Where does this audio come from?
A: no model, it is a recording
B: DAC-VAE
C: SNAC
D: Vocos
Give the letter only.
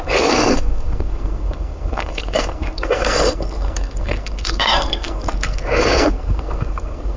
C